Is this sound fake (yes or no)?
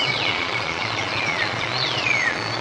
yes